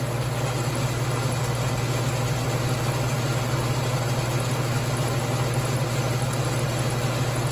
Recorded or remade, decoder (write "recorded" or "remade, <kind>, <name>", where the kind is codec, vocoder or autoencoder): recorded